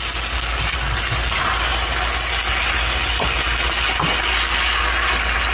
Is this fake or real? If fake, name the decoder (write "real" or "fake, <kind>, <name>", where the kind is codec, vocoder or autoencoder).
real